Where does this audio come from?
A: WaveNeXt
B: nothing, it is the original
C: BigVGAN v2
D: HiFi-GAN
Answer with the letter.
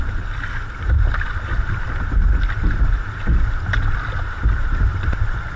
B